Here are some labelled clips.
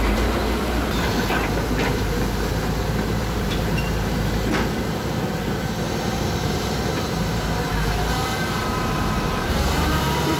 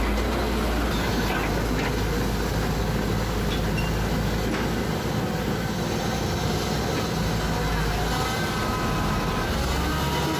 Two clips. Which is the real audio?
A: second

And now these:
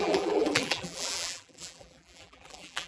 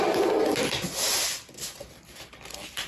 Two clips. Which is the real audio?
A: second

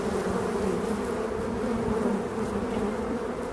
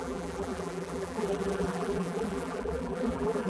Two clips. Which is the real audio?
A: first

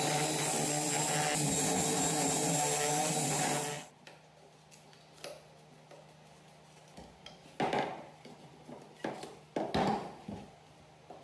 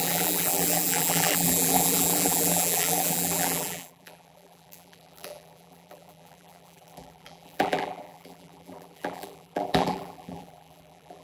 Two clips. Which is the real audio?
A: first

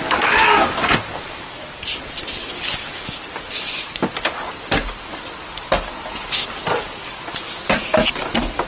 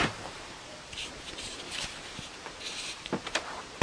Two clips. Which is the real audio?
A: first